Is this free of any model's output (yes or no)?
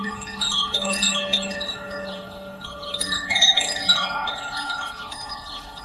no